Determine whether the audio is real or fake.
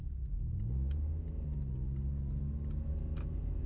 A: real